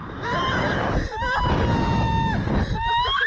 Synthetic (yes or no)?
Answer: no